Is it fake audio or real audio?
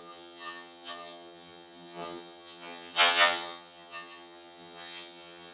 fake